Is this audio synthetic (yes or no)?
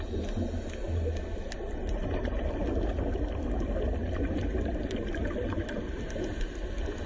no